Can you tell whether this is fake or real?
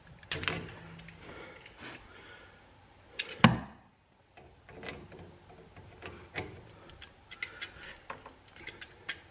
real